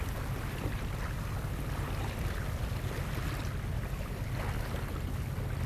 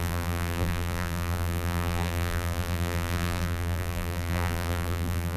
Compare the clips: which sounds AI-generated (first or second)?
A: second